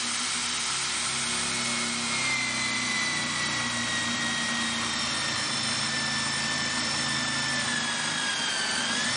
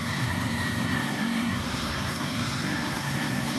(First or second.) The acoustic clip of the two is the first